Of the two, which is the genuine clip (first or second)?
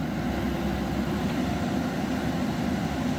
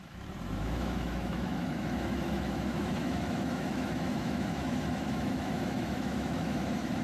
first